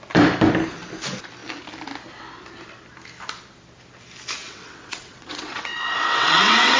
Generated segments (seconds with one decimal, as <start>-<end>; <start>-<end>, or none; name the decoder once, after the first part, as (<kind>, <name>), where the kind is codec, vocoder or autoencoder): 4.4-6.8 (vocoder, WaveNeXt)